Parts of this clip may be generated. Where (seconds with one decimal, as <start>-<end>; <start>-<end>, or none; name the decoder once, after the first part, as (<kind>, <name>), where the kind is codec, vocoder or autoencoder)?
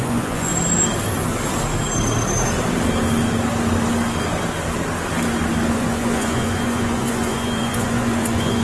0.0-0.5 (vocoder, Vocos); 5.7-8.6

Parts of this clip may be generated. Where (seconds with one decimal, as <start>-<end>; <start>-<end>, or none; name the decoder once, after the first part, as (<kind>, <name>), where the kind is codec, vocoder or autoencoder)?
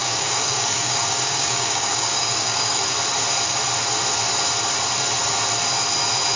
0.0-2.8 (codec, DAC)